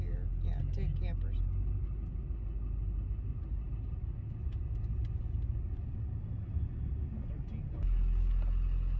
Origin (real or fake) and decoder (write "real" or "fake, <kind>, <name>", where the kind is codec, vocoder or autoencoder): real